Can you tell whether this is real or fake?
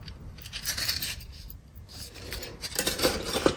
fake